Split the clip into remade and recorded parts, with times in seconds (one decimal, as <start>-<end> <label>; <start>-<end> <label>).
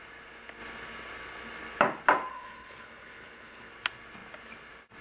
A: 0.0-2.3 recorded; 2.3-3.7 remade; 3.7-5.0 recorded